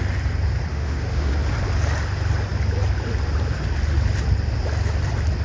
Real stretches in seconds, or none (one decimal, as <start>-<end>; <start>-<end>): 0.0-0.7; 1.3-5.4